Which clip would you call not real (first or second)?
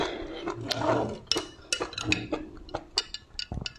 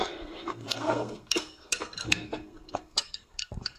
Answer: second